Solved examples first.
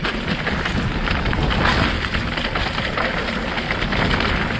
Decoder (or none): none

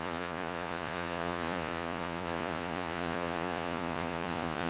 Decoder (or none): vocoder, Vocos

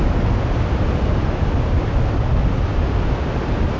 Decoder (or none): none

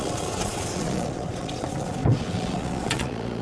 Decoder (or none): vocoder, Vocos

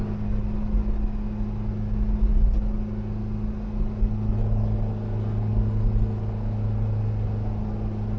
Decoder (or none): none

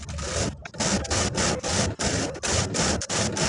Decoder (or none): none